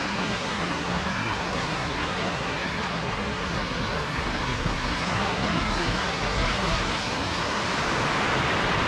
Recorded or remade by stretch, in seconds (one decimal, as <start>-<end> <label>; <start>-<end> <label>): 0.0-7.6 remade; 7.6-8.9 recorded